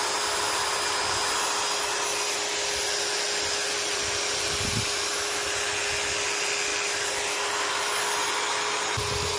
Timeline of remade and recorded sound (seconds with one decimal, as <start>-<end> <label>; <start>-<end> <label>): 0.0-9.4 recorded